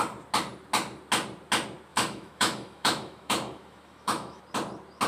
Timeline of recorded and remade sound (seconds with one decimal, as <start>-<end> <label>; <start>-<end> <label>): 0.0-1.9 recorded; 1.9-4.4 remade; 4.4-5.1 recorded